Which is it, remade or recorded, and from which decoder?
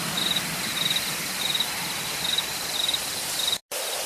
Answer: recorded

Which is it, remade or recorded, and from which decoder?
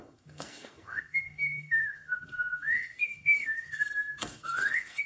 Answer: remade, codec, SNAC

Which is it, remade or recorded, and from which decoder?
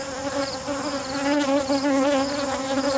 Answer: recorded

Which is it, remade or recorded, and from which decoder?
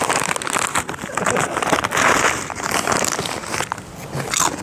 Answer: recorded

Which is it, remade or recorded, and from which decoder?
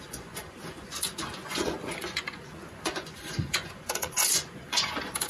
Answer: remade, vocoder, Vocos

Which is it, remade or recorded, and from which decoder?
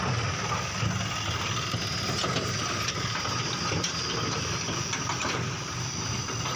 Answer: recorded